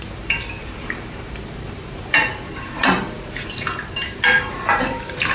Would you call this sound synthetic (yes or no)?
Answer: yes